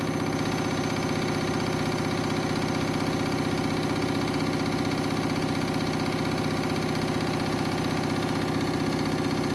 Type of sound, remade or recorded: recorded